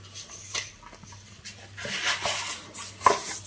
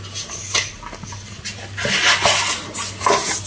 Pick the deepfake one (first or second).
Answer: first